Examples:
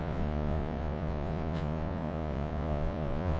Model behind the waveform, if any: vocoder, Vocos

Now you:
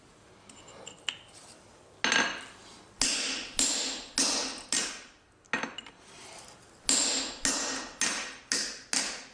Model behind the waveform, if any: none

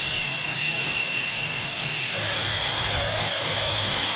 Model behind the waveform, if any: codec, DAC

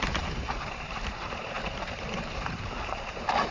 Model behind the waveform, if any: vocoder, BigVGAN v2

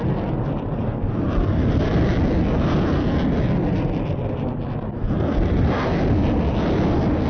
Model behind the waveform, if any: none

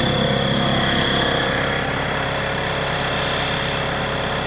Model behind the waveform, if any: none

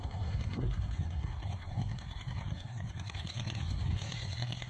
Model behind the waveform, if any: codec, SNAC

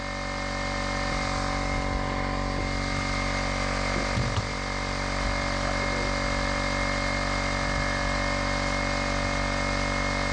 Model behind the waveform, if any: none